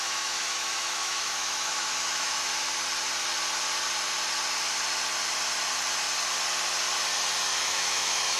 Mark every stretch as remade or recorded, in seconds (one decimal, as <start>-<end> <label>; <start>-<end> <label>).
0.0-2.5 remade; 2.5-7.5 recorded; 7.5-8.4 remade

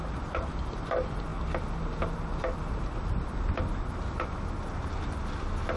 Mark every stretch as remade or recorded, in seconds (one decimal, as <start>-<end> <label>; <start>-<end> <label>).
0.0-5.8 recorded

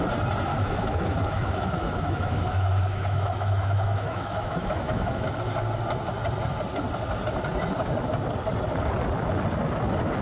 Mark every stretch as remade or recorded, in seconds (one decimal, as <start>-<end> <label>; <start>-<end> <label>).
0.0-0.5 recorded; 0.5-5.3 remade; 5.3-10.2 recorded

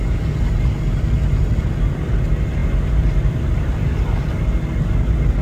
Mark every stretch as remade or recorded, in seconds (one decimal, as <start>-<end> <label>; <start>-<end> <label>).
0.0-5.4 recorded